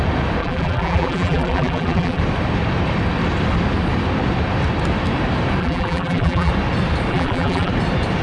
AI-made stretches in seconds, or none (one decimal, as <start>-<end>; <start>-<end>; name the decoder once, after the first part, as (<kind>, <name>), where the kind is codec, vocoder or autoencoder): 0.4-2.2 (vocoder, BigVGAN v2); 5.6-6.5; 7.1-7.7